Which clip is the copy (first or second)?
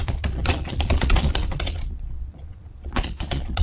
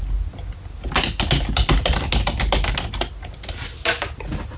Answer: first